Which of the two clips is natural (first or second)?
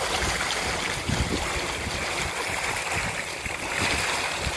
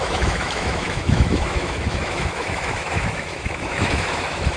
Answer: first